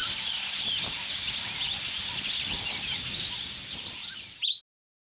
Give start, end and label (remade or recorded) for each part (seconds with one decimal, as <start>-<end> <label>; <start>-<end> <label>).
0.0-5.0 recorded